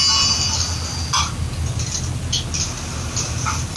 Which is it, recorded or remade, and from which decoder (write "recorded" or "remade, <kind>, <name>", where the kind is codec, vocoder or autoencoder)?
recorded